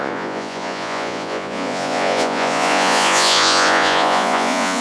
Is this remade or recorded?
remade